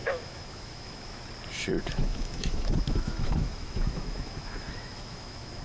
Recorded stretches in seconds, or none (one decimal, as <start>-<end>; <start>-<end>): 1.2-1.8